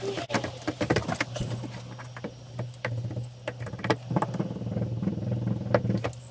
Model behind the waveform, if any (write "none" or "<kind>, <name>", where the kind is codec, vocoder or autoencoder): none